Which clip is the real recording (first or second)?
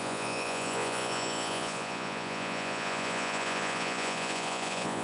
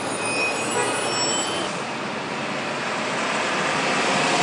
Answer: second